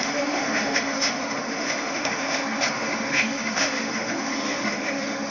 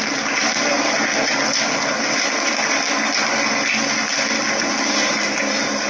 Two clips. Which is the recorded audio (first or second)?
second